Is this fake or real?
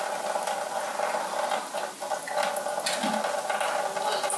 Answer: real